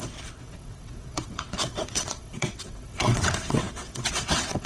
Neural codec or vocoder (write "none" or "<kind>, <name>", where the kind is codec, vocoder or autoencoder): vocoder, WaveNeXt